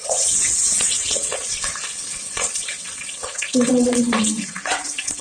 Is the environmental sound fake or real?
fake